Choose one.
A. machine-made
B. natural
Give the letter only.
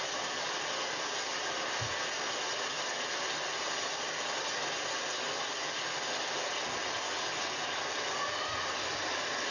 B